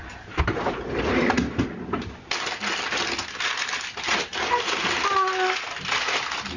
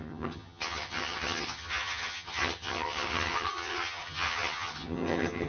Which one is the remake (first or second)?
second